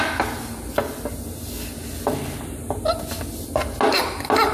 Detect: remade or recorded recorded